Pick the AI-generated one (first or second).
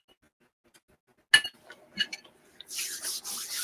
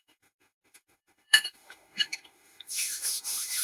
second